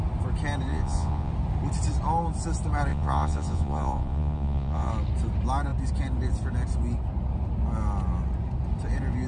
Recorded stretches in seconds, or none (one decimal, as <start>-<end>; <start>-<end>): 0.0-0.7; 1.3-2.9; 4.9-9.3